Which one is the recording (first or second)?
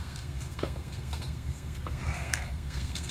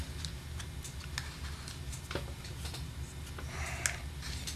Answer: second